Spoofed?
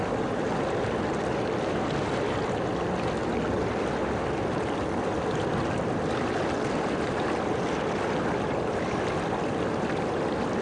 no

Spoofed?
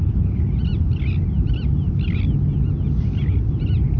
no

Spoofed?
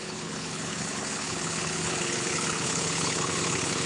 yes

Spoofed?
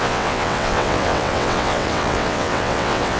yes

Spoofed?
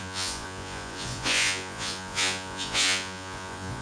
yes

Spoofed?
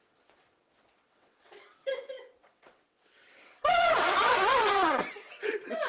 yes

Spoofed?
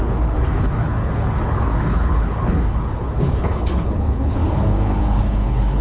yes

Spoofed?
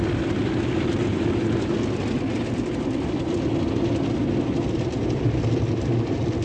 no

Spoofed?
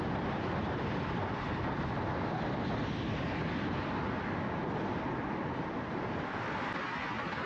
no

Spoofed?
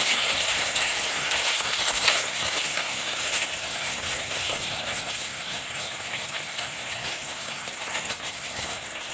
yes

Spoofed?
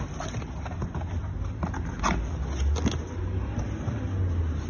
no